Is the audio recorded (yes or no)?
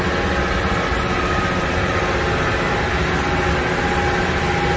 yes